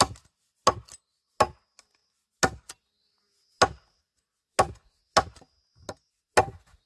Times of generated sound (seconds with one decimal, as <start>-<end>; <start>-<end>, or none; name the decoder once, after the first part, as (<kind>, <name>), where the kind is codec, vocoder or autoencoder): none